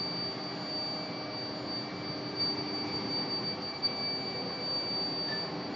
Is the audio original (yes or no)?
yes